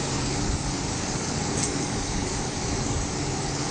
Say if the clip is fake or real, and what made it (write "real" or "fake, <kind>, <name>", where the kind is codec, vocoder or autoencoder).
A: fake, codec, DAC